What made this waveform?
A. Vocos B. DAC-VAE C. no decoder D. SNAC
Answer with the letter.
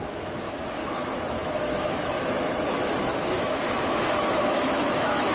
B